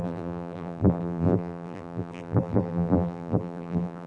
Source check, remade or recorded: remade